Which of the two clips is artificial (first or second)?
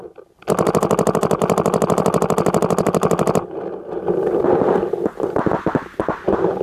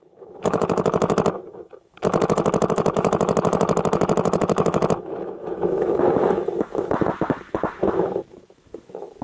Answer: second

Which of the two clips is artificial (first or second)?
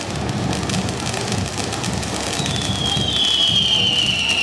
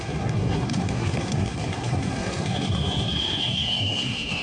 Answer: second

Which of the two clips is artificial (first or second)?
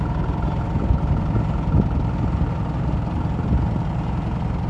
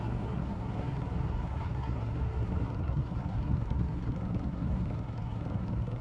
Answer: second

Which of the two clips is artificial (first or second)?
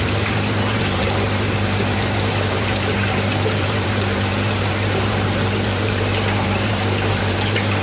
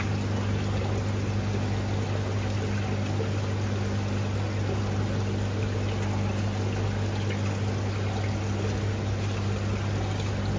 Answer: first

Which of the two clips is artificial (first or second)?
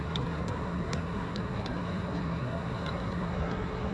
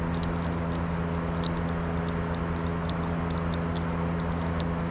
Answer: first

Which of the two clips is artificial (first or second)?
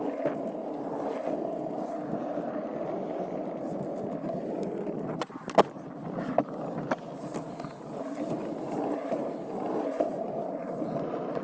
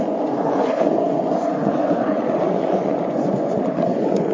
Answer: second